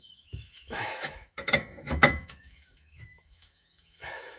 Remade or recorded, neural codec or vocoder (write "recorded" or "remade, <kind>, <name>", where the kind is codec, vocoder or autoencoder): remade, autoencoder, DAC-VAE